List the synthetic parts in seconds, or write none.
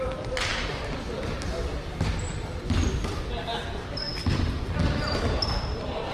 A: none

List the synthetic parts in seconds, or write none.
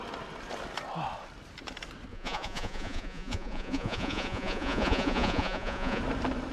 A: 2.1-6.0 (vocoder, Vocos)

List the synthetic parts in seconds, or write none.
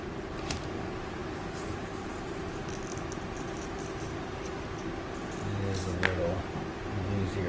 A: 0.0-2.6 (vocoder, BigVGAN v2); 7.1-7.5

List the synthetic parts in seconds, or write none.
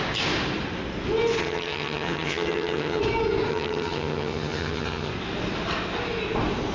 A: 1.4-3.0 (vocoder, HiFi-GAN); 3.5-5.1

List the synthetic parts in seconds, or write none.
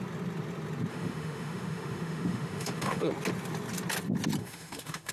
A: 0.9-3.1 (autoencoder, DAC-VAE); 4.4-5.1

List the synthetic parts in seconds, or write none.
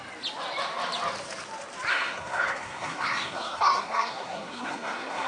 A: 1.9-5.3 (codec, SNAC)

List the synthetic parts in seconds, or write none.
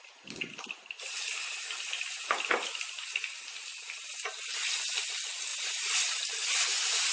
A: 3.7-4.3 (vocoder, BigVGAN v2); 5.5-6.5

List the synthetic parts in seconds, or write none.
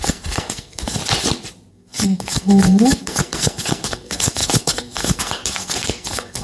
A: 0.0-1.0 (codec, SNAC); 1.7-6.4